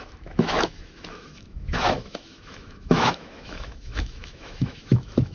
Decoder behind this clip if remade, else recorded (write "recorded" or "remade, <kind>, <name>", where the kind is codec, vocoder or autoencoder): remade, autoencoder, DAC-VAE